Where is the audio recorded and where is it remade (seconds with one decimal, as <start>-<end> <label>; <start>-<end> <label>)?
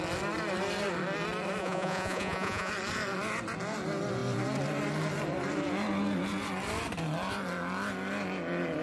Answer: 0.0-1.6 recorded; 1.6-2.7 remade; 2.7-8.8 recorded